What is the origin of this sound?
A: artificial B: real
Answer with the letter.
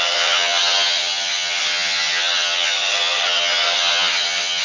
A